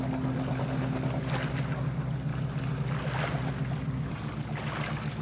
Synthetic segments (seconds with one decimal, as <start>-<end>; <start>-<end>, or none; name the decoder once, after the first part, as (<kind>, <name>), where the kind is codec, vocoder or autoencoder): none